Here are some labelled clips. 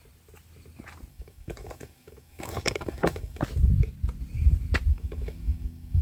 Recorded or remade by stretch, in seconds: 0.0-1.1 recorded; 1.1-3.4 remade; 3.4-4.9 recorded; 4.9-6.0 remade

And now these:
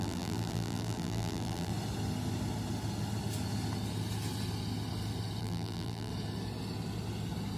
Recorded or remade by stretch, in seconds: 0.0-1.7 remade; 1.7-5.4 recorded; 5.4-6.1 remade; 6.1-7.6 recorded

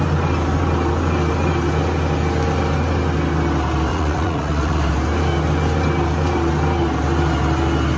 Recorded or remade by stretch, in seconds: 0.0-3.9 recorded; 3.9-4.8 remade; 4.8-8.0 recorded

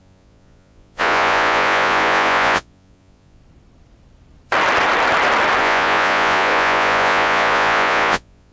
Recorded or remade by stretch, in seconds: 0.0-3.4 remade; 3.4-5.6 recorded; 5.6-8.5 remade

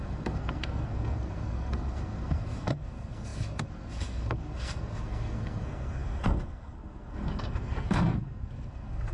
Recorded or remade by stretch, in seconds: 0.0-9.1 remade

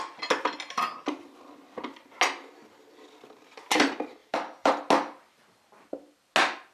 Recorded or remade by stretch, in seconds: 0.0-4.2 recorded; 4.2-4.7 remade; 4.7-6.7 recorded

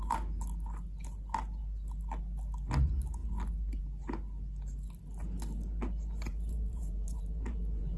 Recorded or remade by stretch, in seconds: 0.0-6.3 recorded; 6.3-8.0 remade